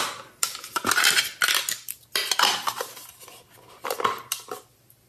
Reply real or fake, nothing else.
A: real